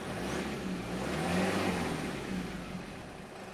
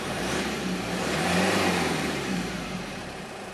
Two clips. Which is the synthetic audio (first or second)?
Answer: second